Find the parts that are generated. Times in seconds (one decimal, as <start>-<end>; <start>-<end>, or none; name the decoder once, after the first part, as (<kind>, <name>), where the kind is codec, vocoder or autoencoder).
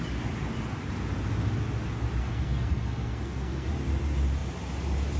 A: 2.2-3.7 (codec, SNAC)